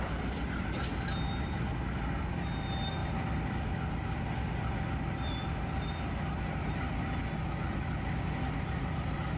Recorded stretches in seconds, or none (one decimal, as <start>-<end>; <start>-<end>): 0.0-9.4